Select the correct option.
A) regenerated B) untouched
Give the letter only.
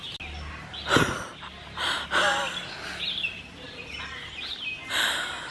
B